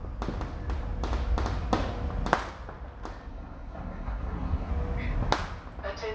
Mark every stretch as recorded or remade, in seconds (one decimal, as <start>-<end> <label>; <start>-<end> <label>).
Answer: 0.0-3.3 recorded; 3.3-4.7 remade; 4.7-6.1 recorded